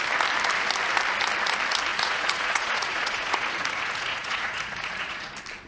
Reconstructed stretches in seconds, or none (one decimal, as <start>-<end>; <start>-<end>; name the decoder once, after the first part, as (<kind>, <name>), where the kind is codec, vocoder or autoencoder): 1.9-5.3 (vocoder, Vocos)